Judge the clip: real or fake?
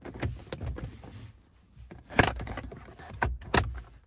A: real